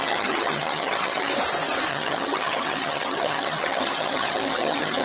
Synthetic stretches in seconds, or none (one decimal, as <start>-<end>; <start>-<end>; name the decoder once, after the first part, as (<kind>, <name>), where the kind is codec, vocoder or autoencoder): 0.0-1.3 (vocoder, HiFi-GAN); 1.9-5.0